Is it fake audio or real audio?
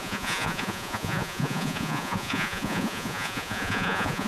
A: fake